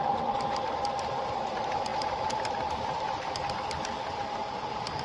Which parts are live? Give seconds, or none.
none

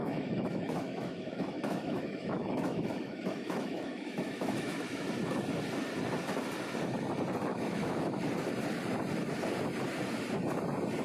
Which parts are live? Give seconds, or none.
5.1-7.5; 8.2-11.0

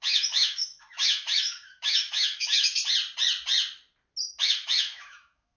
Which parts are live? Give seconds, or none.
2.8-4.4

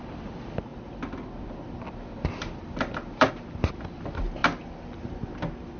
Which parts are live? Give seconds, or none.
0.0-0.7; 3.3-4.4; 5.1-5.8